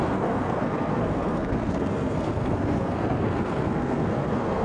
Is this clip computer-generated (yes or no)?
yes